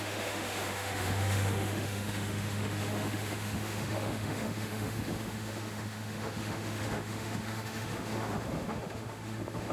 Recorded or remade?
remade